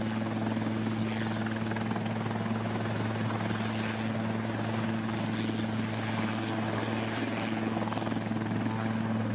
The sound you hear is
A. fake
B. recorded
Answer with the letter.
B